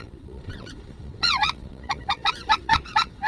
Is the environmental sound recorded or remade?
remade